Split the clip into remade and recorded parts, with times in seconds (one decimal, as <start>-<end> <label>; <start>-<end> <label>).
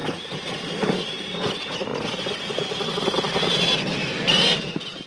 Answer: 0.0-1.0 recorded; 1.0-1.9 remade; 1.9-4.6 recorded; 4.6-5.1 remade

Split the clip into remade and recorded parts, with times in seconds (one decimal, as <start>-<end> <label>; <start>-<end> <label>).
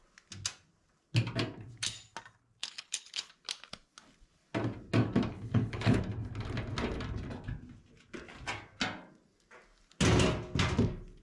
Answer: 0.0-2.6 recorded; 2.6-3.3 remade; 3.3-5.3 recorded; 5.3-6.0 remade; 6.0-11.2 recorded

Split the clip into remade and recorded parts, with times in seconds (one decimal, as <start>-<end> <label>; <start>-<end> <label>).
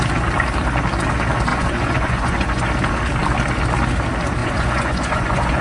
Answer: 0.0-1.5 recorded; 1.5-2.7 remade; 2.7-4.4 recorded; 4.4-5.6 remade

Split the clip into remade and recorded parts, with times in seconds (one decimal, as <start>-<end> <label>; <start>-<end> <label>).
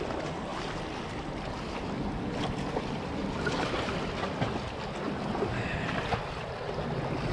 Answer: 0.0-7.3 recorded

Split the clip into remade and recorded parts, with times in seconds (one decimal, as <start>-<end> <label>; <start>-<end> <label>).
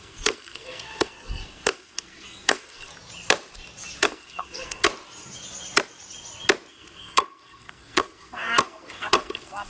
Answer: 0.0-2.9 remade; 2.9-4.0 recorded; 4.0-4.9 remade; 4.9-6.7 recorded; 6.7-9.7 remade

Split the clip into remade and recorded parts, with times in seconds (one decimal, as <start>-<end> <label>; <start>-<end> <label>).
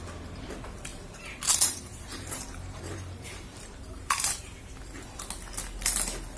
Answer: 0.0-0.9 recorded; 0.9-4.7 remade; 4.7-6.4 recorded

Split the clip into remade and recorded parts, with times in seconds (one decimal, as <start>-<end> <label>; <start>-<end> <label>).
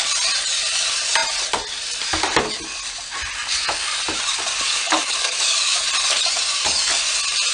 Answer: 0.0-4.7 recorded; 4.7-5.8 remade; 5.8-7.5 recorded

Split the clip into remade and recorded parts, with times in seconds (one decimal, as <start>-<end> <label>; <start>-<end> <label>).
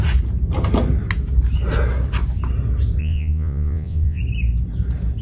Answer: 0.0-3.0 recorded; 3.0-4.2 remade; 4.2-5.2 recorded